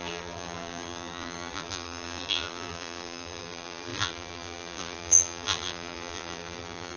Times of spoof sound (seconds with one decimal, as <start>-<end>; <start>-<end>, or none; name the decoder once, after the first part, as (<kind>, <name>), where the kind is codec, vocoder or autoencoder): 0.0-7.0 (vocoder, BigVGAN v2)